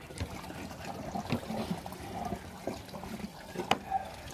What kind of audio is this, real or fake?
real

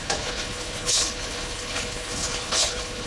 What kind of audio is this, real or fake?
fake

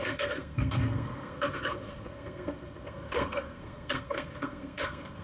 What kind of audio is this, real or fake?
fake